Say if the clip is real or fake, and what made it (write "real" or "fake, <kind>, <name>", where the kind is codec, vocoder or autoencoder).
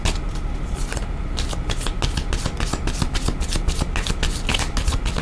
real